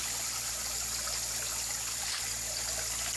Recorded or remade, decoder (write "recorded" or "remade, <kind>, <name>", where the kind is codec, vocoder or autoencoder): recorded